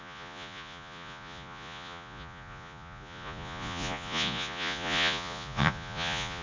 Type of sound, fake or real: fake